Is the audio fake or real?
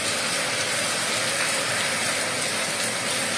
real